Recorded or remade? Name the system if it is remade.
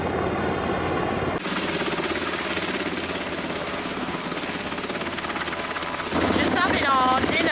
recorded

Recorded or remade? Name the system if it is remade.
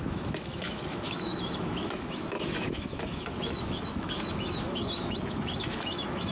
remade, autoencoder, DAC-VAE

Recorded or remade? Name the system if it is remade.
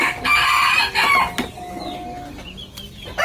recorded